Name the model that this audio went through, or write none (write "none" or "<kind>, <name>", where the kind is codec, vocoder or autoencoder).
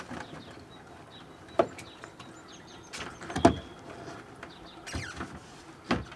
none